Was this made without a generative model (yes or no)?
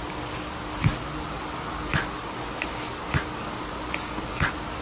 yes